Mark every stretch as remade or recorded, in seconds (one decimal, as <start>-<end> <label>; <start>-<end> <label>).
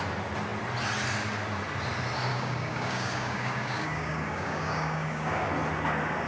0.0-2.3 recorded; 2.3-5.5 remade; 5.5-6.3 recorded